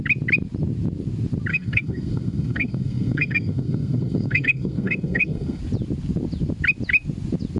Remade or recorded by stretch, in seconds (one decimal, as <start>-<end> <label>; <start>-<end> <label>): 0.0-1.5 recorded; 1.5-5.6 remade; 5.6-7.6 recorded